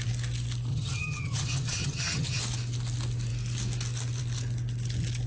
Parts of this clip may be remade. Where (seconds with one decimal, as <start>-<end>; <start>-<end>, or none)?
0.7-2.4